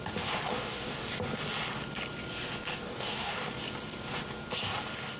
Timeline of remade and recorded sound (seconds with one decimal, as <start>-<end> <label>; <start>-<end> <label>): 0.0-0.5 recorded; 0.5-1.1 remade; 1.1-2.7 recorded; 2.7-3.5 remade; 3.5-5.2 recorded